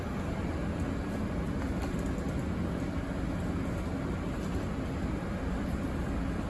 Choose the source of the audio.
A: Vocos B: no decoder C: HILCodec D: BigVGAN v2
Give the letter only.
B